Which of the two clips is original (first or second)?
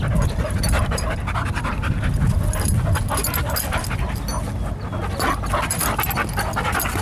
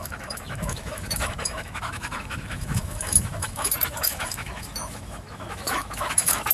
first